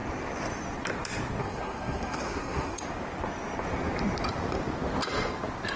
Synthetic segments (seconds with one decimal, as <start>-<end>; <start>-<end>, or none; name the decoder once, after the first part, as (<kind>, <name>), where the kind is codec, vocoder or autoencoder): 1.4-2.8 (codec, SNAC)